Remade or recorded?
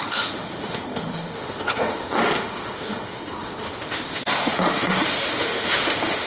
remade